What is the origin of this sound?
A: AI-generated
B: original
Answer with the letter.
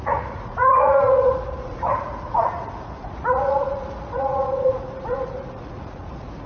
A